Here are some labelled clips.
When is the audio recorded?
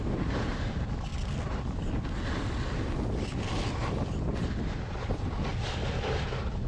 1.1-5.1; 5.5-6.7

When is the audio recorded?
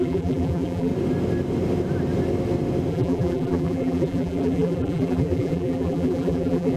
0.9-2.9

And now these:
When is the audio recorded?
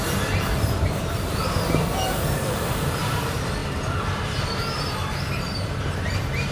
none